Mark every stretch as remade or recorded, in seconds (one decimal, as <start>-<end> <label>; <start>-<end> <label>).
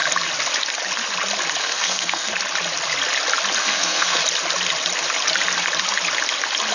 0.0-1.6 recorded; 1.6-2.3 remade; 2.3-3.6 recorded; 3.6-4.2 remade; 4.2-6.7 recorded